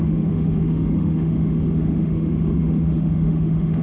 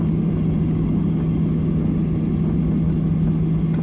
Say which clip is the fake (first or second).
first